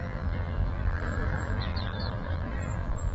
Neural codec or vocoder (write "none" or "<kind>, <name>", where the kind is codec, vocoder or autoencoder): vocoder, BigVGAN v2